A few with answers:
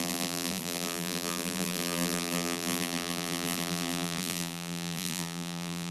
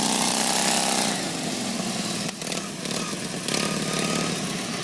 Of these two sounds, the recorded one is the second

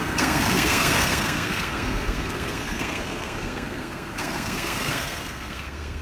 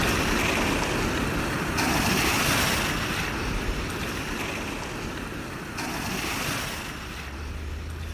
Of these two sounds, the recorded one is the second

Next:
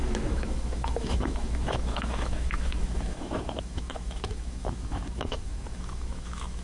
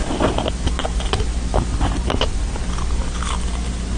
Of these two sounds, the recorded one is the second